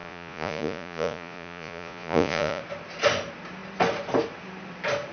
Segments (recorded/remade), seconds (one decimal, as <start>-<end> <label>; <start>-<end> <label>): 0.0-2.6 remade; 2.6-5.1 recorded